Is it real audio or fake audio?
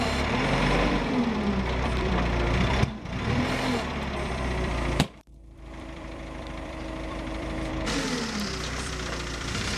fake